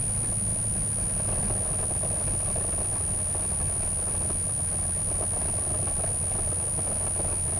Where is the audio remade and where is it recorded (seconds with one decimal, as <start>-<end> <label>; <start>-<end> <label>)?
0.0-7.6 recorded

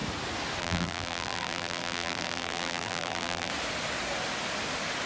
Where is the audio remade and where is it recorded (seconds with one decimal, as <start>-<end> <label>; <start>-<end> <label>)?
0.0-0.6 recorded; 0.6-3.5 remade; 3.5-5.1 recorded

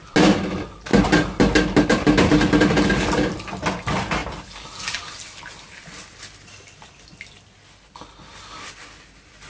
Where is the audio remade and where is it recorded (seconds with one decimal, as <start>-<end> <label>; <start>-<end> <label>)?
0.0-9.5 recorded

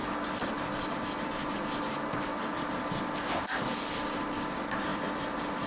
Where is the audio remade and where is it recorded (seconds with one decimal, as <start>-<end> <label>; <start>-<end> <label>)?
0.0-4.9 recorded; 4.9-5.7 remade

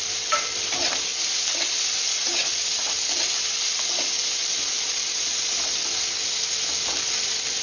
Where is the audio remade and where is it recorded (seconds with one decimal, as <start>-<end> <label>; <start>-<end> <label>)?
0.0-7.6 recorded